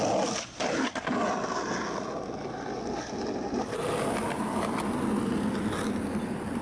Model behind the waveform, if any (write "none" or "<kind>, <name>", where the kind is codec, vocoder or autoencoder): none